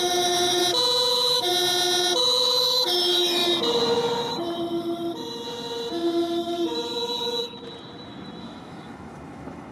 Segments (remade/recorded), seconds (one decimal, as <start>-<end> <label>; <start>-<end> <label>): 0.0-0.6 remade; 0.6-1.1 recorded; 1.1-1.5 remade; 1.5-2.2 recorded; 2.2-3.4 remade; 3.4-8.4 recorded; 8.4-9.7 remade